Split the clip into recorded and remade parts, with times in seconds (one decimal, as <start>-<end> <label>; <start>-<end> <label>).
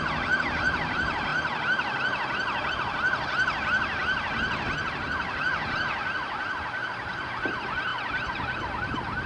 0.0-9.3 recorded